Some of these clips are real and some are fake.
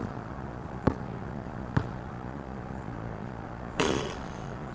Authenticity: fake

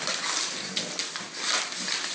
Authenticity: real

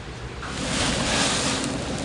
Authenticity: real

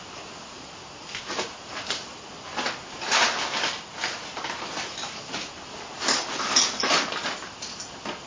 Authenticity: real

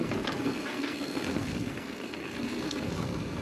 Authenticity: fake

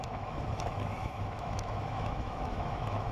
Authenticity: fake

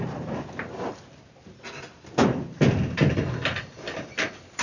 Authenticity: real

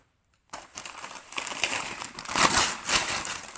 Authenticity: fake